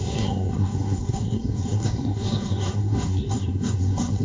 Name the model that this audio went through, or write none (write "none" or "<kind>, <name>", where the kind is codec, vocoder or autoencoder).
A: codec, SNAC